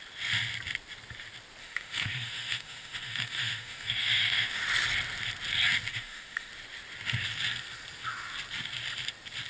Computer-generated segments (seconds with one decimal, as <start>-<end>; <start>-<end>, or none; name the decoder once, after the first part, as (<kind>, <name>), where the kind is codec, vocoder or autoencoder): 1.6-4.6 (autoencoder, DAC-VAE); 5.9-6.5